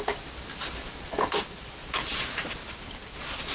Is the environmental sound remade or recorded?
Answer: remade